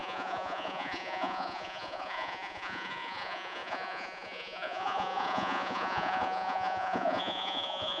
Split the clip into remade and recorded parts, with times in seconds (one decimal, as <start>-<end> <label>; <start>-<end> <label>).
0.0-8.0 remade